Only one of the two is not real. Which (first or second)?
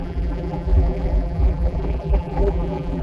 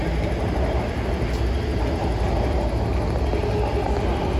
first